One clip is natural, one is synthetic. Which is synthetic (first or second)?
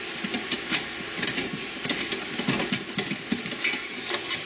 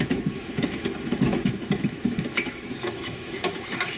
second